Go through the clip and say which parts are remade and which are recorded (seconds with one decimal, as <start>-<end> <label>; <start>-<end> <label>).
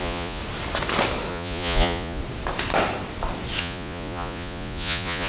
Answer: 0.0-0.4 remade; 0.4-1.3 recorded; 1.3-2.2 remade; 2.2-3.6 recorded; 3.6-5.3 remade